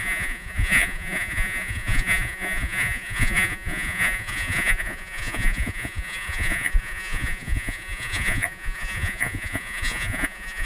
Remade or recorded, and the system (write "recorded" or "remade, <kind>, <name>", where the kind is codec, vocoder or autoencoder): remade, vocoder, Vocos